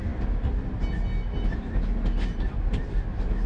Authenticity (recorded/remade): recorded